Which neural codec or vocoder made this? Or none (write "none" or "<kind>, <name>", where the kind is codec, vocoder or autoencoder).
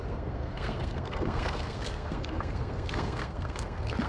codec, SNAC